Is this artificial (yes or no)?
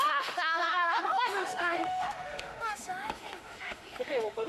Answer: yes